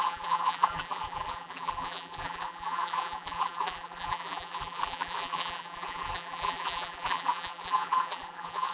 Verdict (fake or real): fake